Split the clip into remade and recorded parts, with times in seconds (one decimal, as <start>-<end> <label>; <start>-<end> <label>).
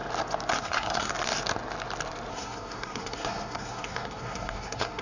0.0-0.6 recorded; 0.6-1.1 remade; 1.1-2.3 recorded; 2.3-5.0 remade